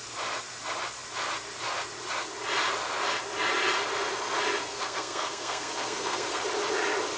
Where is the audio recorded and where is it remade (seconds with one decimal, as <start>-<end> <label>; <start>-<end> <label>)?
0.0-4.6 recorded; 4.6-6.4 remade; 6.4-7.2 recorded